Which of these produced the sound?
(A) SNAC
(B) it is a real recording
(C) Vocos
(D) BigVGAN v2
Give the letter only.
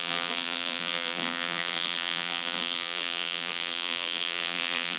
D